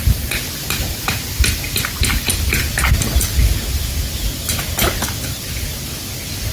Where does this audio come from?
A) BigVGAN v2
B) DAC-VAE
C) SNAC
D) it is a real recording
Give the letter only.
D